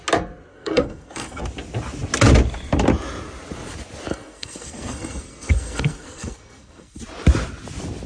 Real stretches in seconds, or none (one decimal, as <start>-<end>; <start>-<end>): 0.0-0.5; 1.4-4.1; 7.0-8.1